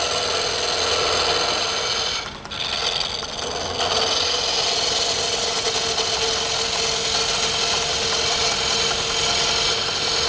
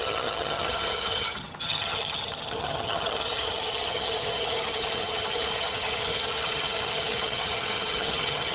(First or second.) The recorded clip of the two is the first